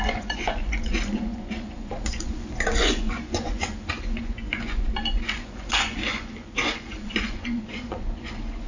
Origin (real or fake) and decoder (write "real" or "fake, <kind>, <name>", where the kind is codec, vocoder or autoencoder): fake, vocoder, Vocos